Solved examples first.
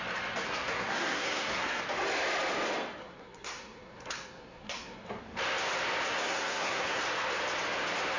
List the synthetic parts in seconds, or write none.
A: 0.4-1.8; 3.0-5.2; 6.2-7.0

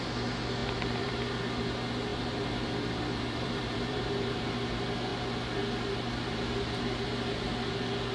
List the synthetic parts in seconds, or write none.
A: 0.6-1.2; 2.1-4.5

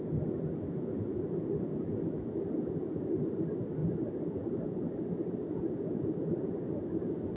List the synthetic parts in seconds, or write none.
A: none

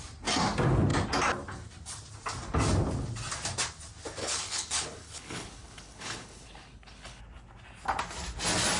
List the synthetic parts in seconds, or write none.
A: 4.2-7.2

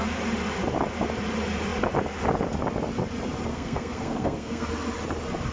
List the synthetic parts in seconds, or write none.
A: 3.5-4.7

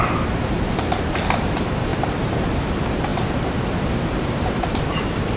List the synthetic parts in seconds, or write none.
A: 0.0-5.4

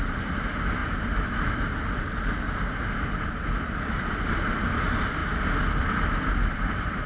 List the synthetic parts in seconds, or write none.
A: 0.0-0.8; 4.5-5.2; 6.1-7.1